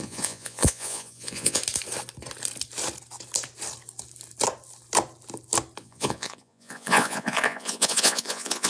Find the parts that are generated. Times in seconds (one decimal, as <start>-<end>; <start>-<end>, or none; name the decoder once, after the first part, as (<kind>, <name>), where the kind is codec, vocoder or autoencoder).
0.0-1.6 (vocoder, Vocos); 5.8-8.7